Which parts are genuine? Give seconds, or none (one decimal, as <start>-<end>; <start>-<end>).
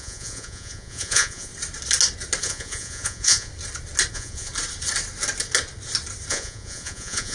1.5-2.4; 3.5-4.1; 4.5-6.3